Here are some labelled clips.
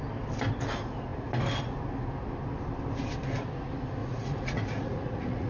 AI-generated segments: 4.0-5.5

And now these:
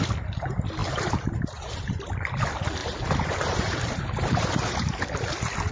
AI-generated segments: 0.8-2.4; 2.8-5.1

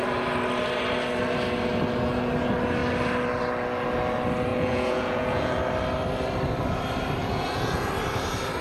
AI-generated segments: 4.5-5.6; 7.2-7.9

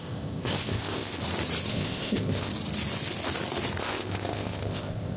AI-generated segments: 0.0-1.1; 1.7-2.5; 3.8-5.2

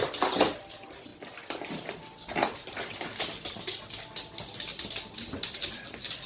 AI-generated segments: none

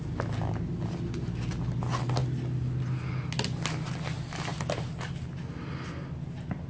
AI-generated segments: none

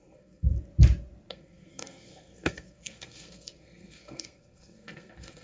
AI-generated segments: 0.0-0.5; 1.3-5.4

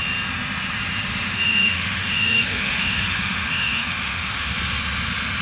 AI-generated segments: 1.3-4.5